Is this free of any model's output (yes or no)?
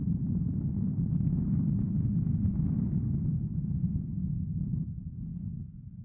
yes